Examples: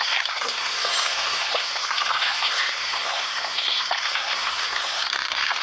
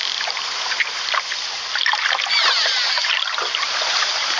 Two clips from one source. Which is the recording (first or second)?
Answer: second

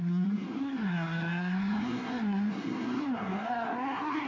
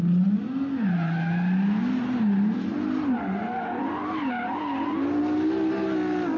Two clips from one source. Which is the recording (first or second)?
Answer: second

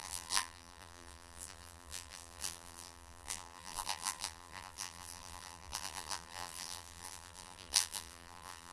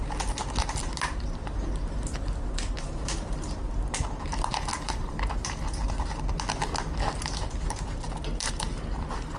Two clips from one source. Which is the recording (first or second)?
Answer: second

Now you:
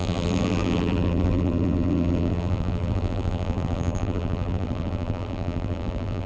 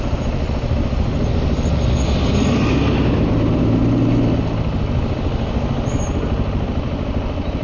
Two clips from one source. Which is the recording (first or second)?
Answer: second